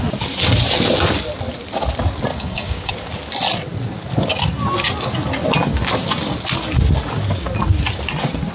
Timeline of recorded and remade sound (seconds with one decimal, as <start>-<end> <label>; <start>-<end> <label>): 0.0-2.3 recorded; 2.3-2.9 remade; 2.9-8.5 recorded

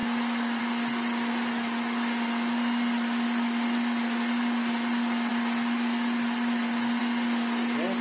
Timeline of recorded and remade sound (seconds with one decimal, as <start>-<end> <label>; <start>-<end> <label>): 0.0-8.0 recorded

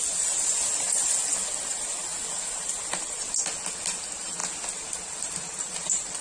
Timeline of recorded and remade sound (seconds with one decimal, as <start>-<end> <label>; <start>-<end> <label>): 0.0-6.2 recorded

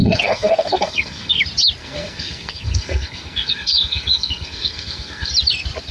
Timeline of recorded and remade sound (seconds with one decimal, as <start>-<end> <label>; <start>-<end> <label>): 0.0-1.4 remade; 1.4-1.8 recorded; 1.8-5.3 remade; 5.3-5.9 recorded

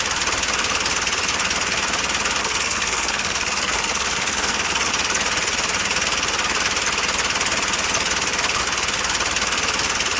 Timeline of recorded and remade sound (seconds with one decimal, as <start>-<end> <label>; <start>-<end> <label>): 0.0-2.4 recorded; 2.4-4.9 remade; 4.9-10.2 recorded

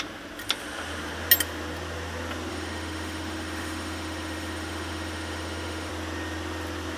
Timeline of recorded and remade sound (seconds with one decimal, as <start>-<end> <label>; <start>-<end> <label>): 0.0-2.5 recorded; 2.5-5.9 remade; 5.9-7.0 recorded